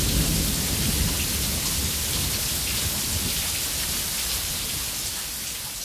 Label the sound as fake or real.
real